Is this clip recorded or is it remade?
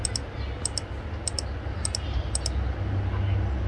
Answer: recorded